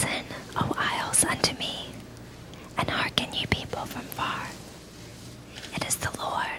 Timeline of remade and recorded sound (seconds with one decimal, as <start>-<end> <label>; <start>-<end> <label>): 0.0-1.2 recorded; 1.2-2.0 remade; 2.0-5.1 recorded; 5.1-6.6 remade